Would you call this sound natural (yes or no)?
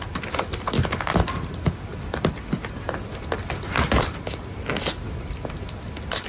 yes